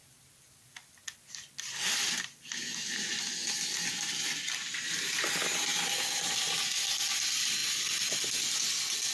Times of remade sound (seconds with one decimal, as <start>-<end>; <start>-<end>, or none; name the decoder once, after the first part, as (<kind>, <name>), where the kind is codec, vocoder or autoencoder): none